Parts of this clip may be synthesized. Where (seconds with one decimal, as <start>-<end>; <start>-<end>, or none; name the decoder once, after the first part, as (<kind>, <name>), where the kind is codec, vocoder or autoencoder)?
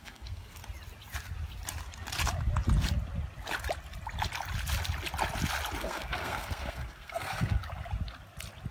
0.0-0.6 (codec, SNAC); 5.8-7.6